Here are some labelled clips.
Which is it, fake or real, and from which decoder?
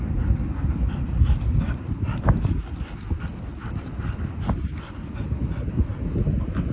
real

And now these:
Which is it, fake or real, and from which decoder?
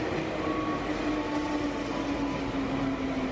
real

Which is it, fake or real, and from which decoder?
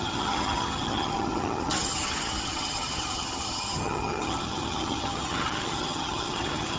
fake, vocoder, HiFi-GAN